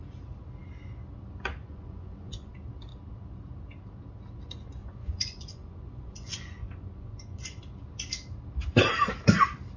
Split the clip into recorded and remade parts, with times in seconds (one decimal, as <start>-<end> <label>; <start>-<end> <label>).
0.0-1.6 recorded; 1.6-2.5 remade; 2.5-4.8 recorded; 4.8-7.6 remade; 7.6-9.8 recorded